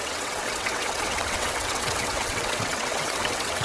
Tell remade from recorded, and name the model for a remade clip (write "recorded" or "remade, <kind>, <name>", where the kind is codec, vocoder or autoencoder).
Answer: remade, vocoder, WaveNeXt